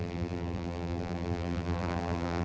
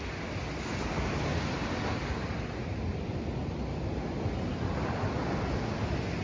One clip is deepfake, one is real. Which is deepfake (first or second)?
first